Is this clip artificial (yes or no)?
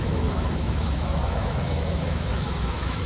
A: yes